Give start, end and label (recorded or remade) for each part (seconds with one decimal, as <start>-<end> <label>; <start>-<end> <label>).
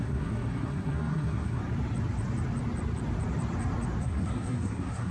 0.0-1.6 remade; 1.6-4.0 recorded; 4.0-5.1 remade